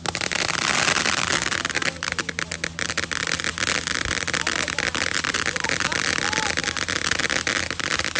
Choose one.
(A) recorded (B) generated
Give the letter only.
A